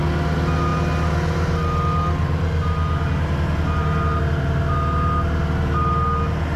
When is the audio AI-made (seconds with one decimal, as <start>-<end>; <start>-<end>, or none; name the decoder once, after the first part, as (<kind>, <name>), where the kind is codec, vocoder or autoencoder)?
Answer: none